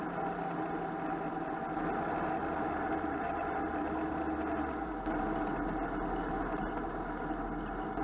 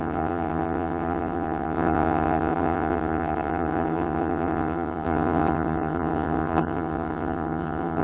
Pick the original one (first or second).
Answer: first